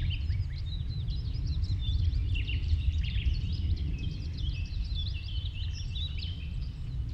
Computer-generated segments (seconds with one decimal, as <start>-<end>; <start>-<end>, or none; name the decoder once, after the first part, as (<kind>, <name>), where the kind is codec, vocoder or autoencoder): 1.8-4.4 (vocoder, BigVGAN v2); 5.0-5.9